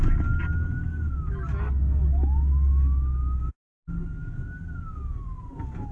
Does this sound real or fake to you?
real